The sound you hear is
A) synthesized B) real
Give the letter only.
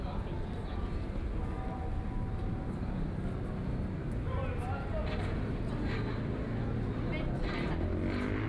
B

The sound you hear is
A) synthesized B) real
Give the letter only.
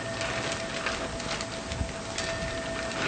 B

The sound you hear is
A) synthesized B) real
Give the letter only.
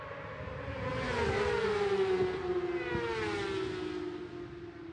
B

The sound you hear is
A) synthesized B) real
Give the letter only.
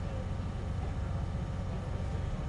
B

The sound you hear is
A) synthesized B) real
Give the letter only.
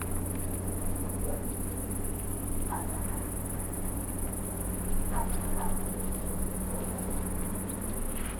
B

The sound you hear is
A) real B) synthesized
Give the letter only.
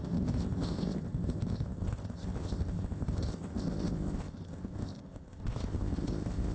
B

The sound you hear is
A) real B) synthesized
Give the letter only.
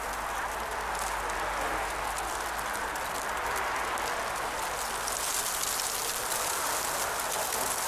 A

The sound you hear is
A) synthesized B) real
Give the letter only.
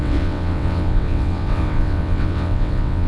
A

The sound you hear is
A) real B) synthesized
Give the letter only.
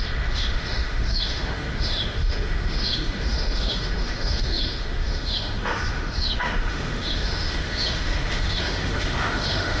B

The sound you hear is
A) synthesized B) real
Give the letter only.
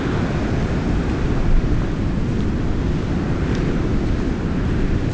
B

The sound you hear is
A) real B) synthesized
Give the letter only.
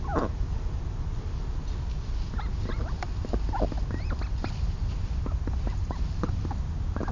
A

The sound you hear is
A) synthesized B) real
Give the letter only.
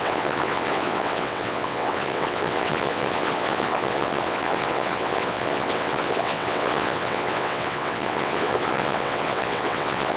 A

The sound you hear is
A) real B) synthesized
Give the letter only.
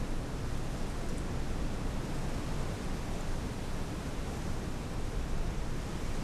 A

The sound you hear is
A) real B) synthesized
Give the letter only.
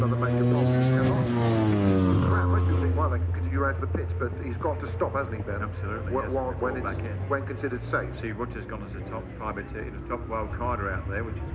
A